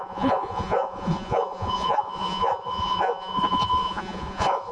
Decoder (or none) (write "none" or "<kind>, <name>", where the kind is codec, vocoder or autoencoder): vocoder, Vocos